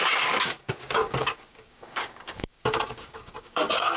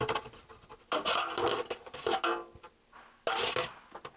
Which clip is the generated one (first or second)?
first